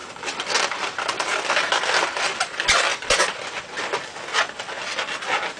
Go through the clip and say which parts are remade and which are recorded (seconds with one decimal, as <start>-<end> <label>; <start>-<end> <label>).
0.0-5.6 recorded